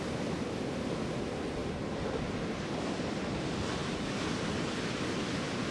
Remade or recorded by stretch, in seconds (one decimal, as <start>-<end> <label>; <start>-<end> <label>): 0.0-5.7 recorded

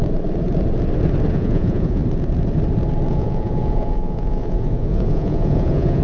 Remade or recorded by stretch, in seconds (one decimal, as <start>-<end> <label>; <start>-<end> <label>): 0.0-1.3 recorded; 1.3-2.0 remade; 2.0-3.1 recorded; 3.1-6.0 remade

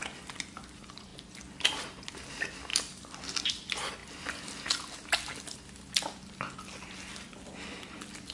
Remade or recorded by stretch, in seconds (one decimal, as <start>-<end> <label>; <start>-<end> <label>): 0.0-2.7 recorded; 2.7-3.5 remade; 3.5-8.3 recorded

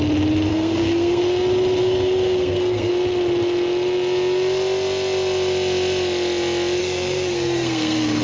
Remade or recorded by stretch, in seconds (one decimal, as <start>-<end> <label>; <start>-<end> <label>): 0.0-0.5 recorded; 0.5-1.2 remade; 1.2-1.8 recorded; 1.8-2.9 remade; 2.9-6.8 recorded; 6.8-8.2 remade

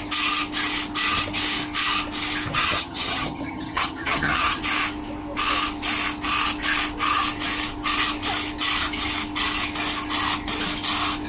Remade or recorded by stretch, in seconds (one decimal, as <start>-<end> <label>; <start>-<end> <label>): 0.0-2.5 recorded; 2.5-4.6 remade; 4.6-11.3 recorded

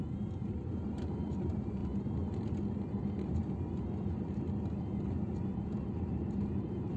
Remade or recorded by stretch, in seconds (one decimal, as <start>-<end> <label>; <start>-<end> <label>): 0.0-1.8 remade; 1.8-5.4 recorded; 5.4-7.0 remade

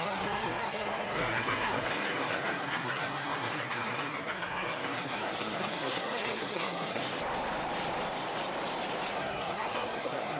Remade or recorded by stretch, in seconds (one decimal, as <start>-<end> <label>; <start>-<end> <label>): 0.0-7.0 remade; 7.0-9.1 recorded; 9.1-10.4 remade

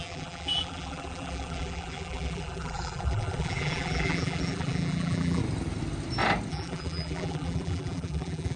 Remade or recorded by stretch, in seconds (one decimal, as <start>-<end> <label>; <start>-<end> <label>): 0.0-5.4 remade; 5.4-6.5 recorded; 6.5-8.6 remade